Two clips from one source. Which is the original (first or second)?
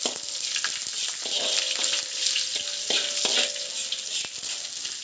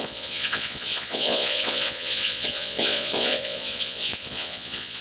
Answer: first